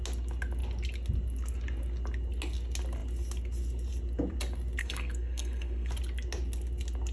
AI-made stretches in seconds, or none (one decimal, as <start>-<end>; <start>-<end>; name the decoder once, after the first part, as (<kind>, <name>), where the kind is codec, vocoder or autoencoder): 4.8-5.9 (codec, SNAC)